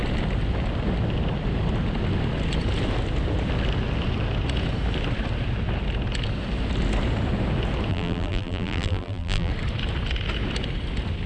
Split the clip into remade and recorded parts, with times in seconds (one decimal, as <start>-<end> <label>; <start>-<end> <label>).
0.0-7.9 recorded; 7.9-9.5 remade; 9.5-11.3 recorded